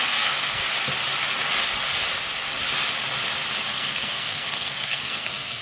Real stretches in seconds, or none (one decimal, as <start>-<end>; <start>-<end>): 0.6-3.7